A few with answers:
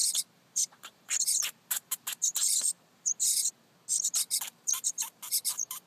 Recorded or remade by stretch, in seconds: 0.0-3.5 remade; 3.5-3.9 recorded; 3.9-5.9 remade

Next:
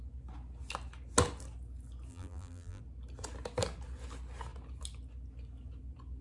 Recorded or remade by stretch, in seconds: 0.0-2.1 recorded; 2.1-2.8 remade; 2.8-6.2 recorded

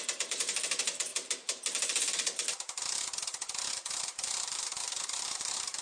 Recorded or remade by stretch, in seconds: 0.0-5.8 remade

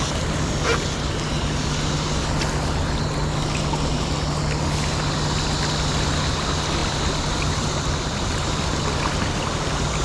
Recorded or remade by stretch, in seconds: 0.0-6.8 recorded; 6.8-9.2 remade; 9.2-10.0 recorded

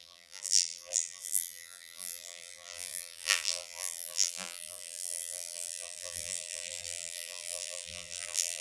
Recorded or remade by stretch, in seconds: 0.0-8.6 remade

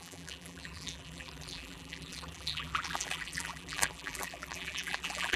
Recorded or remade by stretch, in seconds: 0.0-5.4 remade

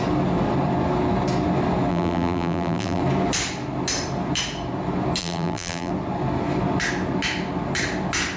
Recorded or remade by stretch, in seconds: 0.0-1.9 recorded; 1.9-3.0 remade; 3.0-5.2 recorded; 5.2-5.9 remade; 5.9-8.4 recorded